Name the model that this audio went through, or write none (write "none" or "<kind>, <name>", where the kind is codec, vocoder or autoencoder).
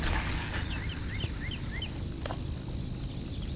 none